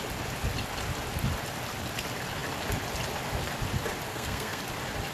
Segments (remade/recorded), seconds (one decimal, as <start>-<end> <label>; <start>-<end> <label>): 0.0-4.1 recorded; 4.1-4.6 remade; 4.6-5.1 recorded